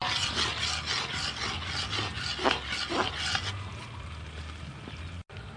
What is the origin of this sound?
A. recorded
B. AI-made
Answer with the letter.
A